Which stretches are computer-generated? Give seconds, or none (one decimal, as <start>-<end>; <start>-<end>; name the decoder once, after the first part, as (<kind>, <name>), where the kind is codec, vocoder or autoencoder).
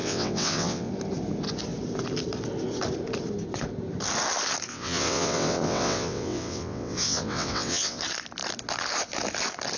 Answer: 0.0-0.9 (vocoder, WaveNeXt); 4.7-8.0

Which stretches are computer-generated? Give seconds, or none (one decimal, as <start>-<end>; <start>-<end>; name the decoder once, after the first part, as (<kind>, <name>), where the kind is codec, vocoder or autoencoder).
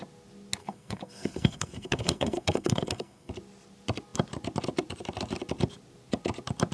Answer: 0.6-3.3 (codec, SNAC)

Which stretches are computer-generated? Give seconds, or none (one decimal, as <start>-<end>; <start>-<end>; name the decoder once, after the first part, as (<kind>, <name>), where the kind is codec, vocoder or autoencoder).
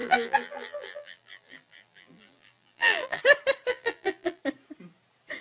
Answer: 0.0-3.2 (vocoder, BigVGAN v2); 3.7-4.4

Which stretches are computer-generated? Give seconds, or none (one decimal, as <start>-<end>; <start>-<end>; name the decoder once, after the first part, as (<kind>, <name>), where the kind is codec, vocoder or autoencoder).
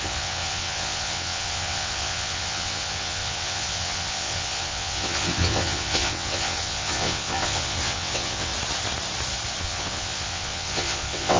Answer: 0.0-8.5 (vocoder, WaveNeXt); 9.6-11.4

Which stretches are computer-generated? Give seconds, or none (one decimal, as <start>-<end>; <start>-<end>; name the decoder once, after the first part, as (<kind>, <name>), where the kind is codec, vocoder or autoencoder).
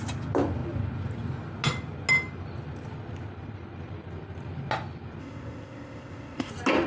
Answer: 5.2-6.5 (codec, ZipCodec)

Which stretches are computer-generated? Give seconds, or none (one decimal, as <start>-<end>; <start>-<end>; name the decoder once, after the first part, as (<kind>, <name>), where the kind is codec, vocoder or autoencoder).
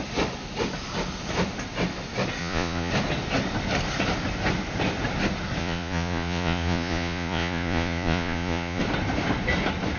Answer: 2.4-2.9 (vocoder, Vocos); 5.6-8.8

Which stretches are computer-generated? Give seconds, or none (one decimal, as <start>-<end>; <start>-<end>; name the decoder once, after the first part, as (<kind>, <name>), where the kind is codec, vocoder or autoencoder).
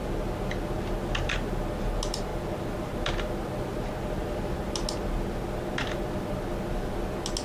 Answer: none